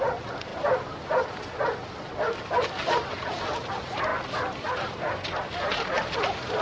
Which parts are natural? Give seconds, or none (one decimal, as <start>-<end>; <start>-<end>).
0.0-6.6